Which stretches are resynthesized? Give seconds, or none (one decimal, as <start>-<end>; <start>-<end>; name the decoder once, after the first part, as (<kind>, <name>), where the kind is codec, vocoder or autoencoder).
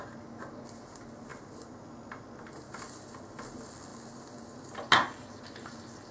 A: none